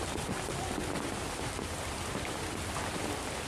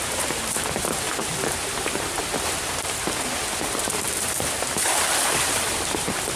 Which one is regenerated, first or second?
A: second